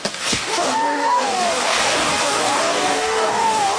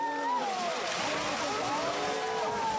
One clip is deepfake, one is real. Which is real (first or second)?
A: second